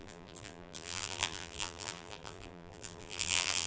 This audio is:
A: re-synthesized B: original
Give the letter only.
A